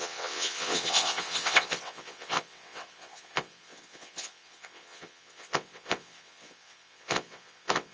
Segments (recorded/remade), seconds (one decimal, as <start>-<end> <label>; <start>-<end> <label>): 0.0-7.9 remade